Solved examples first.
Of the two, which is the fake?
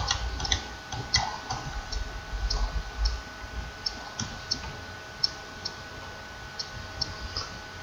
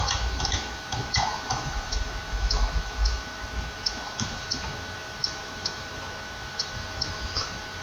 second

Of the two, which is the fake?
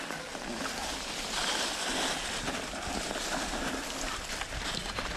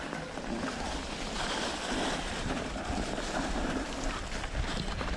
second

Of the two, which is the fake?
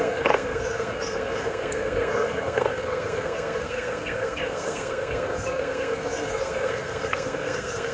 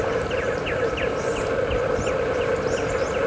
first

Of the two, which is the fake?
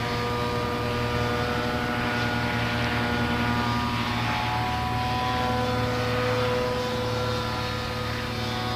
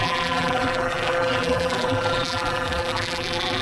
second